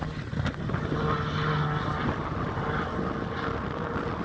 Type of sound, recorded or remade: recorded